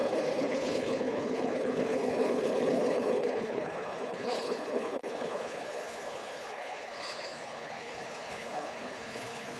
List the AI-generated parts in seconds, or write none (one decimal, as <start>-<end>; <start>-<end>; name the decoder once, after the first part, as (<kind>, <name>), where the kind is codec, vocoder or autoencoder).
0.0-9.6 (codec, HILCodec)